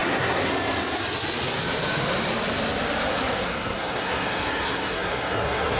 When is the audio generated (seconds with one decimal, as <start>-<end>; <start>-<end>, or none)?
0.0-0.5; 3.1-5.8